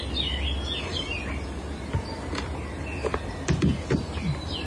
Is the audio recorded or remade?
recorded